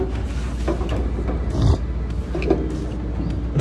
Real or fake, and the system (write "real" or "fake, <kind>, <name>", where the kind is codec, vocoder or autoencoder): real